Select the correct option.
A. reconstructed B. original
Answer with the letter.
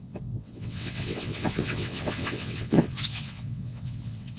A